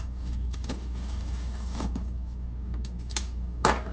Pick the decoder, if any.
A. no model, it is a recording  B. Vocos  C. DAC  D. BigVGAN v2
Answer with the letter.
C